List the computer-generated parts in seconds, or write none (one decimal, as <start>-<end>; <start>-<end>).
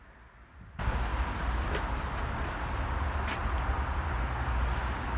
1.1-4.2